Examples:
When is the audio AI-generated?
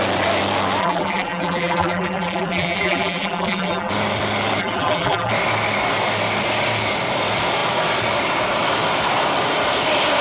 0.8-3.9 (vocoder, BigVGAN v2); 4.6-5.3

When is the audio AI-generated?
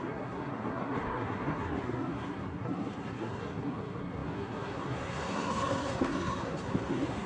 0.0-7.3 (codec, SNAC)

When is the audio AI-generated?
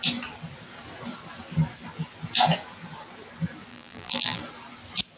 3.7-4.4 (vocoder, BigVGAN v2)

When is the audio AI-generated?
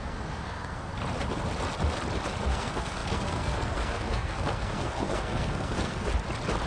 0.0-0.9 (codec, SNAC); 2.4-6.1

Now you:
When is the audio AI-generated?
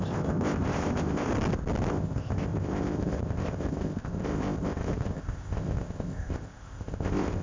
0.0-1.3 (codec, ZipCodec); 1.9-7.4